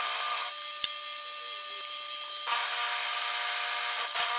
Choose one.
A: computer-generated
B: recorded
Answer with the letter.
B